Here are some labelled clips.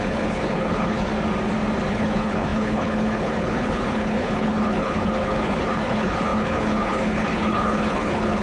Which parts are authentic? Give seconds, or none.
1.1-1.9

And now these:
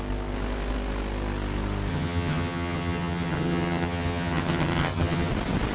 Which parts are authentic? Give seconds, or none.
0.0-1.9; 5.3-5.7

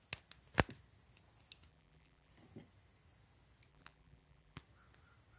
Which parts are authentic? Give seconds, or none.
0.0-1.7; 2.3-3.7; 4.6-5.4

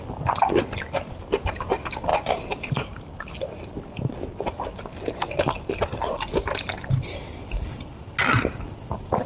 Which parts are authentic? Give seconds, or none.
0.0-9.3

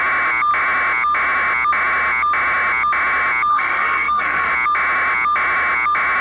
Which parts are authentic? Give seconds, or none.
0.0-3.5; 4.5-6.2

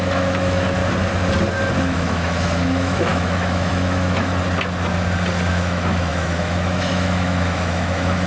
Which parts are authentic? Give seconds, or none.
0.8-1.8; 4.3-5.5

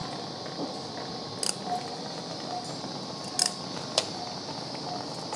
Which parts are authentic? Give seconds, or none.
0.0-5.4

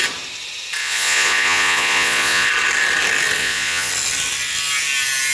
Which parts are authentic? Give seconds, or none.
0.0-0.8; 2.5-3.4; 3.9-5.3